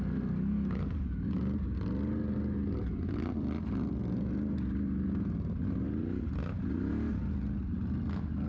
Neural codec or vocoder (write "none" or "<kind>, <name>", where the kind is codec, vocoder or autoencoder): none